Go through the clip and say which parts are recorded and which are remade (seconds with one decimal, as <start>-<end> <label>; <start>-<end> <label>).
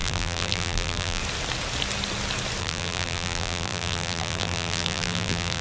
0.0-1.2 remade; 1.2-2.6 recorded; 2.6-5.6 remade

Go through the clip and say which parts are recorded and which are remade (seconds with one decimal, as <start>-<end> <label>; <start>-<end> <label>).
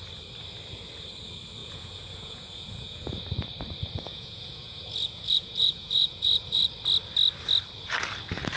0.0-1.6 recorded; 1.6-3.1 remade; 3.1-4.1 recorded; 4.1-6.6 remade; 6.6-8.6 recorded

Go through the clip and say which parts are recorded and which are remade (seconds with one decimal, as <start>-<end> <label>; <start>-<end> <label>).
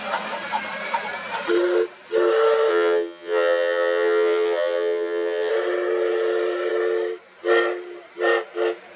0.0-2.7 recorded; 2.7-5.5 remade; 5.5-9.0 recorded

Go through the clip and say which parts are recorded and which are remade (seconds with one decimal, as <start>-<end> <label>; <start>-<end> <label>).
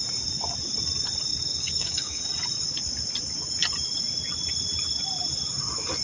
0.0-1.3 recorded; 1.3-2.2 remade; 2.2-6.0 recorded